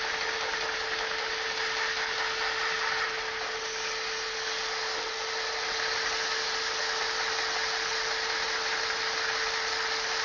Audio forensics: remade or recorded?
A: recorded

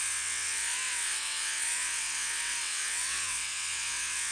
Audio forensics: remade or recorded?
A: remade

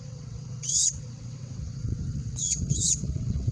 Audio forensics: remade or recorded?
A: remade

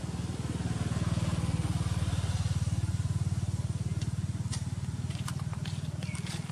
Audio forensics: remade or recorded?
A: recorded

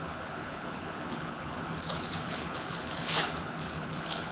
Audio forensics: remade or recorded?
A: remade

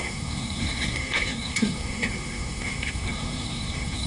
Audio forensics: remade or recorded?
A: remade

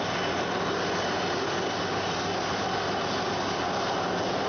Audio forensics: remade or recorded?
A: recorded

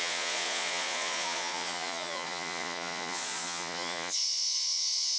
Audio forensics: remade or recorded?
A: remade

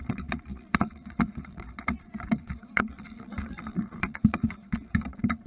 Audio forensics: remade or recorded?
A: remade